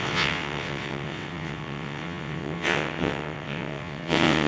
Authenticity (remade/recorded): remade